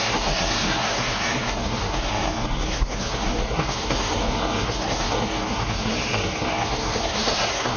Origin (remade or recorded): remade